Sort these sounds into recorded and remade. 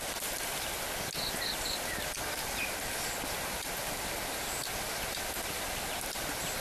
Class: recorded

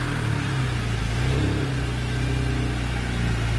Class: recorded